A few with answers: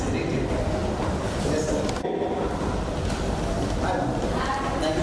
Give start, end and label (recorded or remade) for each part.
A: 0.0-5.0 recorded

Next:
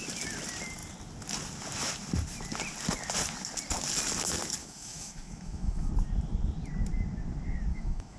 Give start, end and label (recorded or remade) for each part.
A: 0.0-4.6 recorded; 4.6-5.9 remade; 5.9-7.7 recorded; 7.7-8.2 remade

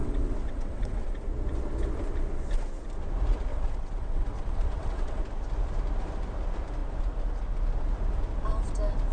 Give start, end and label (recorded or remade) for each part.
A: 0.0-1.1 remade; 1.1-3.5 recorded; 3.5-5.2 remade; 5.2-9.1 recorded

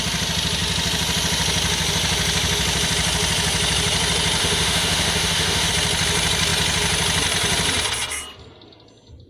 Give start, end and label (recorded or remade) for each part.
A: 0.0-4.4 recorded; 4.4-5.7 remade; 5.7-9.3 recorded

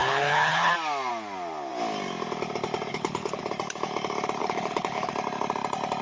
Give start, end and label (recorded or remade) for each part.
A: 0.0-0.7 remade; 0.7-2.9 recorded; 2.9-3.4 remade; 3.4-4.4 recorded; 4.4-5.1 remade; 5.1-6.0 recorded

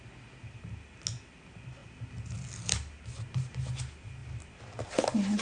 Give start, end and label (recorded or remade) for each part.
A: 0.0-5.4 recorded